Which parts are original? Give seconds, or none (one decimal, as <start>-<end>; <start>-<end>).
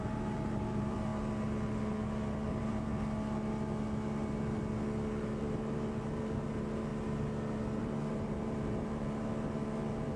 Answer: 1.1-2.5; 2.9-5.4; 6.9-7.8